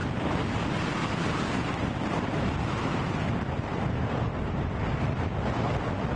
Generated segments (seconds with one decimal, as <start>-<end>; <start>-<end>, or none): 3.7-4.9